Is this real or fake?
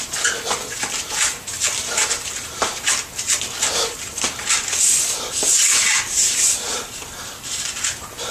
fake